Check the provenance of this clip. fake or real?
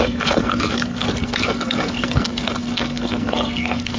fake